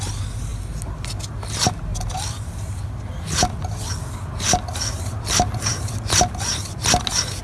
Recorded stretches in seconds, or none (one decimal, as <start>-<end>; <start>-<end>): 0.0-7.4